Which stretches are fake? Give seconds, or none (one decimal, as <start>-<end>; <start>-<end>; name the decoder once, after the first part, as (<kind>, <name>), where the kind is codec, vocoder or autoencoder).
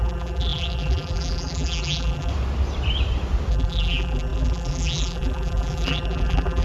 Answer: 0.0-2.3 (vocoder, BigVGAN v2); 3.5-6.6